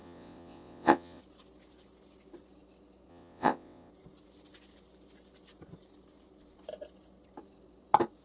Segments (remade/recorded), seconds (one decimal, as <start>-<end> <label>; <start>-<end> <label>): 0.0-1.2 remade; 1.2-3.1 recorded; 3.1-3.9 remade; 3.9-8.2 recorded